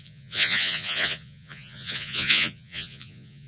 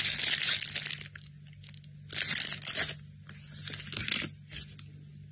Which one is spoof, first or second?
first